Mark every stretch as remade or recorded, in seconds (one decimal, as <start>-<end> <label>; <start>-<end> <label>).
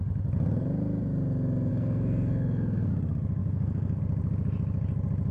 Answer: 0.0-1.7 recorded; 1.7-2.9 remade; 2.9-3.4 recorded; 3.4-4.0 remade; 4.0-5.3 recorded